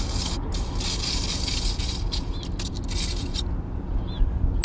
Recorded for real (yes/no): yes